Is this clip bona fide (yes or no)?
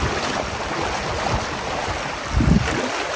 yes